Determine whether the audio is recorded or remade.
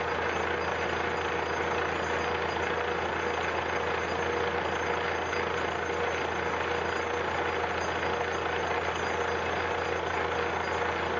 recorded